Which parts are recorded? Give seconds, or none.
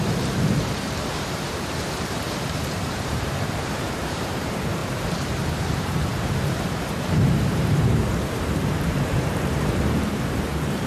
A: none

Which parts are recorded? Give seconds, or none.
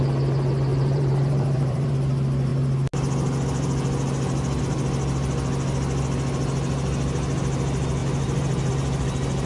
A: 0.0-0.7; 1.9-8.0; 8.7-9.5